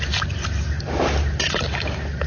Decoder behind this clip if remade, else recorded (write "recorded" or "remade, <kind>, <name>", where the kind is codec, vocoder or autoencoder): recorded